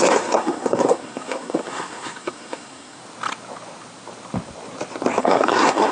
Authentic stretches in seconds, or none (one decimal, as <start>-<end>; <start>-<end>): 3.0-5.2